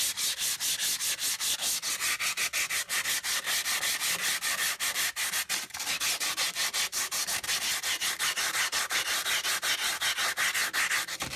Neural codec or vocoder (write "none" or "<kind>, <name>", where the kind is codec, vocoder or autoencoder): none